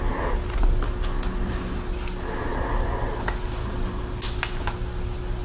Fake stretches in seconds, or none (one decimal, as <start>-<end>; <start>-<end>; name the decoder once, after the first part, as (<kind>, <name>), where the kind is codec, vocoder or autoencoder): none